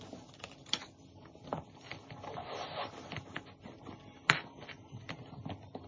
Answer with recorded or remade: recorded